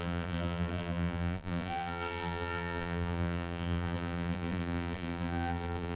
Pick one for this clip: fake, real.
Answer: fake